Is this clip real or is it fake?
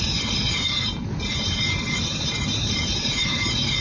fake